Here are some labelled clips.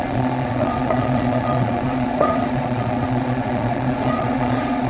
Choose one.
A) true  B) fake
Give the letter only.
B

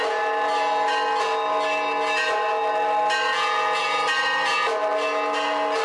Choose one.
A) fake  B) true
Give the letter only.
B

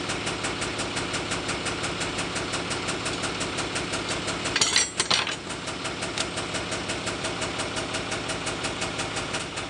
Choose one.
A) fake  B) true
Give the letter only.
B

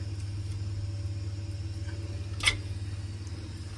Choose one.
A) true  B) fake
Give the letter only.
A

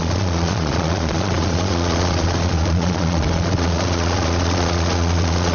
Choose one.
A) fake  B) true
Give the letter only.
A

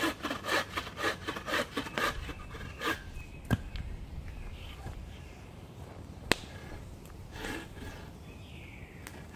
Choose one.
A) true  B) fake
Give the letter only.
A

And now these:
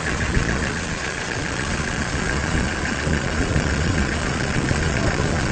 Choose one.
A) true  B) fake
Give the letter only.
B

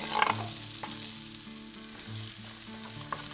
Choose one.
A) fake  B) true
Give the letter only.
B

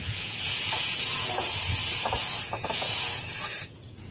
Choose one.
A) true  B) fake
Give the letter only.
B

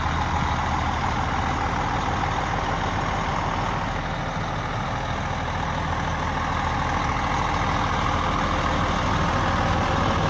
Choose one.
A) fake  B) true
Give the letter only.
B